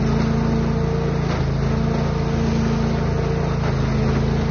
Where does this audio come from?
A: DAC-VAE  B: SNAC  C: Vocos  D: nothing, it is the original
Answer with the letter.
D